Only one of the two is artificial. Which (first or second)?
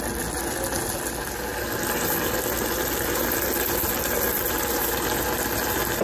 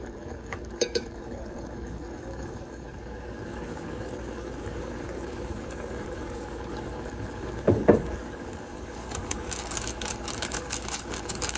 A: second